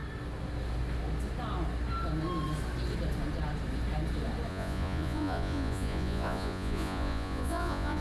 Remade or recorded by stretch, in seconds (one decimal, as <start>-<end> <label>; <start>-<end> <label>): 0.0-4.5 recorded; 4.5-8.0 remade